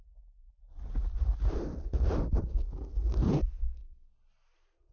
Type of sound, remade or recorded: recorded